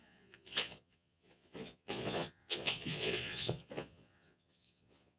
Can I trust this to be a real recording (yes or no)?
no